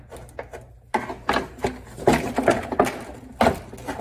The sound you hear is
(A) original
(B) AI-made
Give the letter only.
A